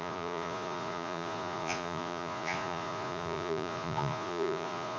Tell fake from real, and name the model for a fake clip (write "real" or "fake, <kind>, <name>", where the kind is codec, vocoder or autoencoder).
fake, vocoder, Vocos